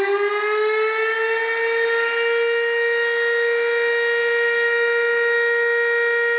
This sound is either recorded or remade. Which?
recorded